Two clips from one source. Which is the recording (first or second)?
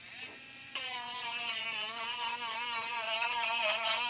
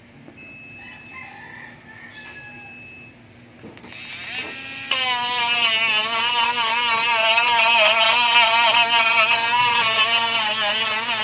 second